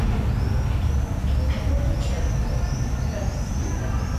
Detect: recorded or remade recorded